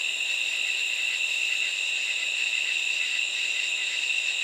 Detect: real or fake real